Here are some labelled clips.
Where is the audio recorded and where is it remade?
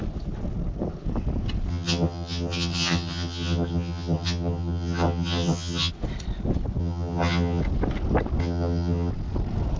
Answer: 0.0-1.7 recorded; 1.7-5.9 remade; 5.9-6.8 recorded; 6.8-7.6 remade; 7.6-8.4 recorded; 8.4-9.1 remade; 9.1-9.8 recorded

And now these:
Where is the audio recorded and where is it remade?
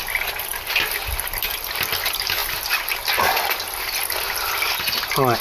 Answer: 0.0-5.4 recorded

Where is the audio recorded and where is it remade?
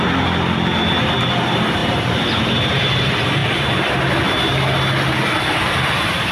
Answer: 0.0-6.3 recorded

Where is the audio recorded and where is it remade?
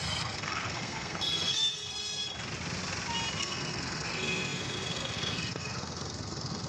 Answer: 0.0-2.3 remade; 2.3-3.4 recorded; 3.4-6.7 remade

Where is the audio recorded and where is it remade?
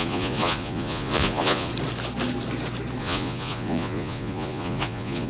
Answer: 0.0-1.7 remade; 1.7-3.0 recorded; 3.0-5.3 remade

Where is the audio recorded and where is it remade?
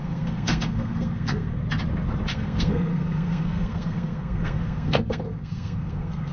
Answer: 0.0-1.6 remade; 1.6-2.3 recorded; 2.3-6.3 remade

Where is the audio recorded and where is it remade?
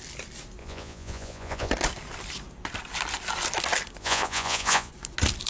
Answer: 0.0-0.6 recorded; 0.6-1.7 remade; 1.7-4.0 recorded; 4.0-4.9 remade; 4.9-5.5 recorded